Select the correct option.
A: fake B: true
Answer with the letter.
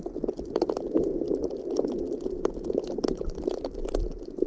B